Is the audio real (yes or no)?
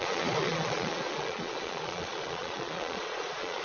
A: no